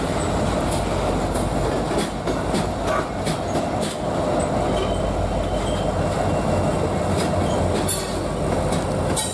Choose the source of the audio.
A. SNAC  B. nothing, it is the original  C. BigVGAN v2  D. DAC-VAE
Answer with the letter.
B